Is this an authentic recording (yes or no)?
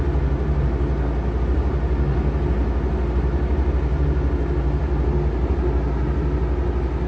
yes